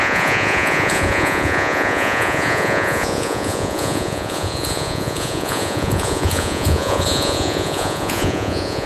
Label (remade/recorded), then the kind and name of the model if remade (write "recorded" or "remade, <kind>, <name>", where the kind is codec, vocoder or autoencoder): remade, vocoder, Vocos